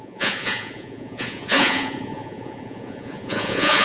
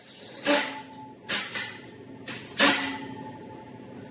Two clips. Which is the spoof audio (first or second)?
first